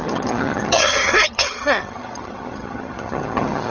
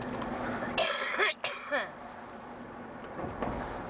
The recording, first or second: second